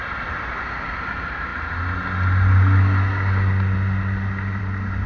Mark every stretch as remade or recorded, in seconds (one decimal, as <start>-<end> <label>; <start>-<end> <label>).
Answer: 0.0-5.1 recorded